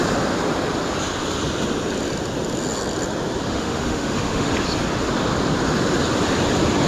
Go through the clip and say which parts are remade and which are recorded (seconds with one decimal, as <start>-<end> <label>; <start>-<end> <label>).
0.0-3.5 recorded; 3.5-4.5 remade; 4.5-6.9 recorded